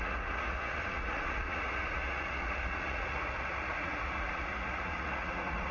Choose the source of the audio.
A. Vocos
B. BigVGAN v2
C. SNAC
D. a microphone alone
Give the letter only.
A